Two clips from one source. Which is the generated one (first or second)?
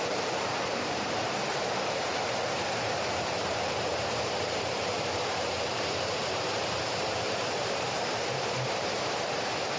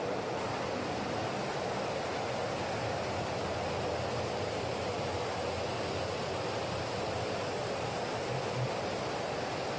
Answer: first